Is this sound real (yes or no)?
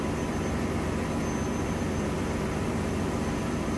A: yes